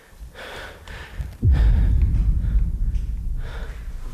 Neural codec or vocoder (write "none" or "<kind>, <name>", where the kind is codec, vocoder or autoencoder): vocoder, BigVGAN v2